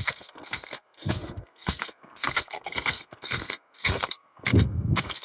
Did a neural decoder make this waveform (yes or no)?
yes